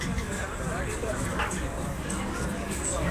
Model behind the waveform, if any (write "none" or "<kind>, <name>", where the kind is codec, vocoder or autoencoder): codec, DAC